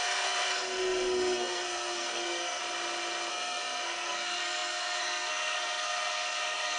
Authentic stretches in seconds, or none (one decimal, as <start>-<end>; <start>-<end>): 2.6-3.3